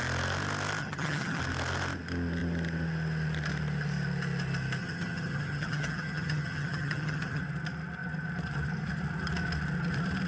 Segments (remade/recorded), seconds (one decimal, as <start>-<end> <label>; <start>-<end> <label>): 0.0-0.8 recorded; 0.8-1.4 remade; 1.4-4.8 recorded; 4.8-7.4 remade; 7.4-10.3 recorded